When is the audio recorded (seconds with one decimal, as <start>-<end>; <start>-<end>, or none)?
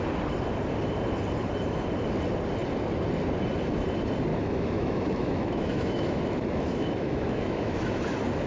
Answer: 0.0-4.3; 7.9-8.5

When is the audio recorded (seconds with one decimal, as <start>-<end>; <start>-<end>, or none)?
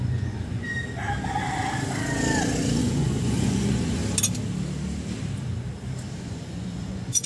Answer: 0.7-2.8; 4.0-6.2